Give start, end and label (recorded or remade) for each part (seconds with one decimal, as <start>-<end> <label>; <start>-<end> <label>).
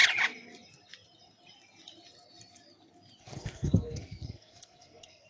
0.0-3.2 recorded; 3.2-5.3 remade